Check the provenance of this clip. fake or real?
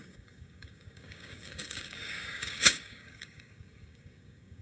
fake